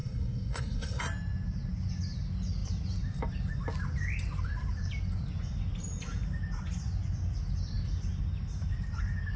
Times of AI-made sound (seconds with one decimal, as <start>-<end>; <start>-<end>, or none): 0.0-1.0